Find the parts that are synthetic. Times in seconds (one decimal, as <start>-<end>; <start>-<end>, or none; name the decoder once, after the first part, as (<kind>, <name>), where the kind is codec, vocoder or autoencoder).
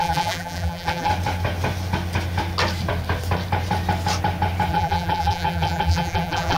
0.0-1.1 (vocoder, BigVGAN v2); 4.7-6.6